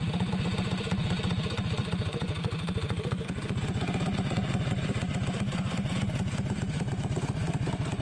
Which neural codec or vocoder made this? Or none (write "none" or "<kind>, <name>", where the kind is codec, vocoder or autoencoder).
vocoder, Vocos